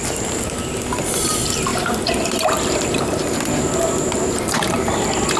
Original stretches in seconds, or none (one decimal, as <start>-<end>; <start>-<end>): 0.0-1.7; 4.9-5.4